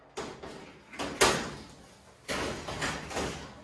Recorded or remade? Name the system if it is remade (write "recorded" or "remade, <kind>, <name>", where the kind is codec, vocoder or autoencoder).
recorded